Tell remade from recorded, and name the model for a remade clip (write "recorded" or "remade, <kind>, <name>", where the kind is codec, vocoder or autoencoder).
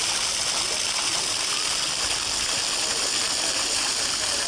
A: recorded